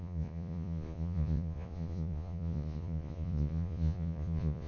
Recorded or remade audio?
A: remade